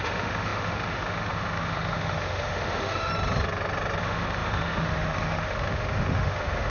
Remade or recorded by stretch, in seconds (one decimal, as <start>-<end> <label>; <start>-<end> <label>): 0.0-3.1 remade; 3.1-4.0 recorded; 4.0-6.7 remade